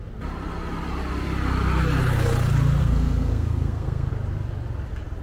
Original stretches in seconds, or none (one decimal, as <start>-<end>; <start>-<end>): 0.0-2.8; 4.1-5.2